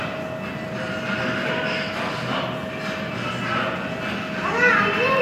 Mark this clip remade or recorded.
recorded